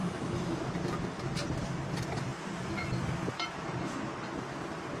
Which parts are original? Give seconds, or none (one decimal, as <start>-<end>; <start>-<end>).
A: 0.6-5.0